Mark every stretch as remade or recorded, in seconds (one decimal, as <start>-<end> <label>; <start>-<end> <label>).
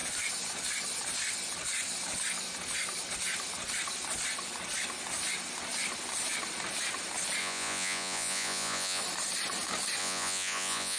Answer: 0.0-7.4 recorded; 7.4-9.0 remade; 9.0-10.0 recorded; 10.0-11.0 remade